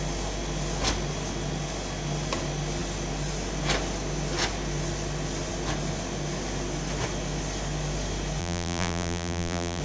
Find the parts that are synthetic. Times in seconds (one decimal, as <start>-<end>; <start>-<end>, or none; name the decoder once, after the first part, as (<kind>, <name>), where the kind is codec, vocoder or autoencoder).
8.4-9.8 (vocoder, BigVGAN v2)